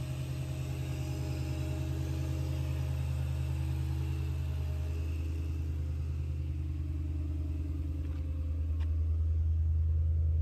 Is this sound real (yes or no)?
yes